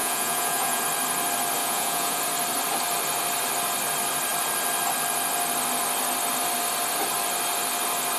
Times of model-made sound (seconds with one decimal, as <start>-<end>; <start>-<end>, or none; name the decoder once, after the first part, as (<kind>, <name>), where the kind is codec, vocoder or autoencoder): 0.0-0.8 (vocoder, Vocos); 1.6-2.2

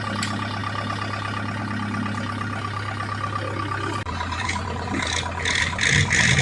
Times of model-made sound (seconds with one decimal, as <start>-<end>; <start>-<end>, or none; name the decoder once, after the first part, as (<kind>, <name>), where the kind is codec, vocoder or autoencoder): none

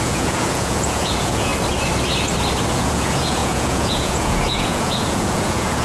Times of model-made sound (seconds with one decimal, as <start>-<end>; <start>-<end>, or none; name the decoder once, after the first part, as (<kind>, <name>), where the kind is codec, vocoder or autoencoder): 0.0-1.5 (vocoder, Vocos); 2.7-5.8

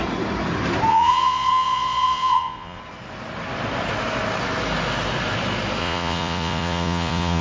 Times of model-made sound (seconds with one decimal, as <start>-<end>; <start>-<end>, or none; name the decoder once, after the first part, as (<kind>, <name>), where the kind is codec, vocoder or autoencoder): 0.9-2.8 (vocoder, Vocos); 5.8-7.4

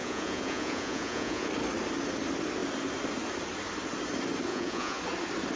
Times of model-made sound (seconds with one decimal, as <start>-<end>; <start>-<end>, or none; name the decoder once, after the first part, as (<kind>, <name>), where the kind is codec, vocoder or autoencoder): 0.0-1.5 (vocoder, Vocos); 4.5-5.0

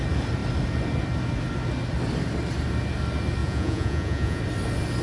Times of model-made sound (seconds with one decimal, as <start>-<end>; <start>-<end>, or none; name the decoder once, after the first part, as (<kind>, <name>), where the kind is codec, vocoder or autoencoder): 3.4-4.4 (vocoder, Vocos)

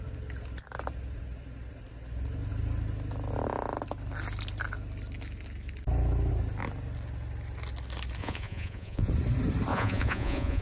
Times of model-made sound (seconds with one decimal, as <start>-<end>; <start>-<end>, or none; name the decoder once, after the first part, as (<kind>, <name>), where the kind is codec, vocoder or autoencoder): 8.2-9.1 (vocoder, Vocos); 9.7-10.6